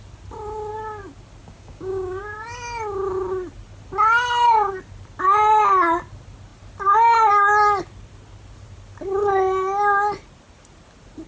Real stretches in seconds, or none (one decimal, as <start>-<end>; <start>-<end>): 0.0-1.4; 2.2-11.3